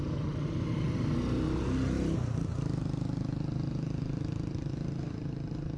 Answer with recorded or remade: recorded